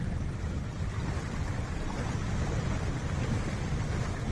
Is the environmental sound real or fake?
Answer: real